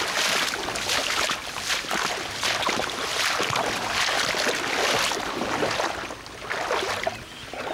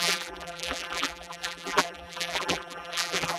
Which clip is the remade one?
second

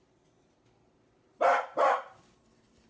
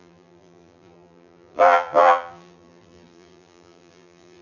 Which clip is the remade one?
second